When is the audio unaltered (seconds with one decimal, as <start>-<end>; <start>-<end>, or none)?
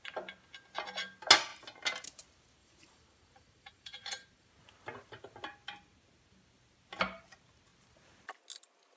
0.0-2.6; 4.5-9.0